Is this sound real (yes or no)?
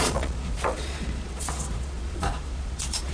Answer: no